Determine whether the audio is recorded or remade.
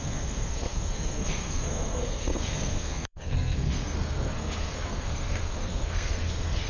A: remade